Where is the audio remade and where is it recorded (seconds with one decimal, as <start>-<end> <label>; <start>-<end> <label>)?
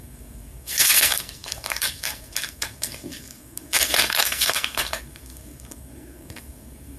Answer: 0.0-7.0 remade